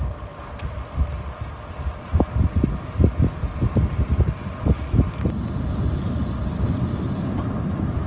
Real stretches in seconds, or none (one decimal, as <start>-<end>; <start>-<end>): 0.0-8.1